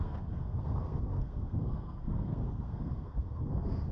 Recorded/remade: remade